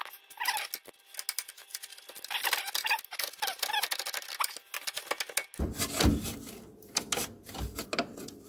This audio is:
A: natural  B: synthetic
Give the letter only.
A